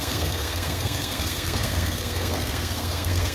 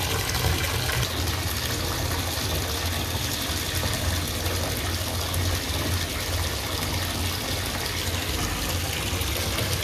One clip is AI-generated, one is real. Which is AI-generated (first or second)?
first